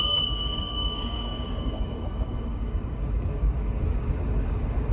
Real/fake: fake